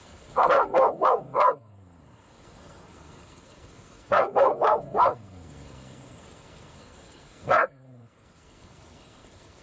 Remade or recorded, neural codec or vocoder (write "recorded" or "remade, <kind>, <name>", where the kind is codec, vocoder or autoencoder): remade, codec, SNAC